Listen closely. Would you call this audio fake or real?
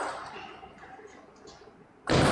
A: real